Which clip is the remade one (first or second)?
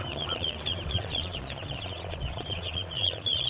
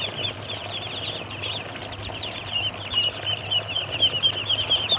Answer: first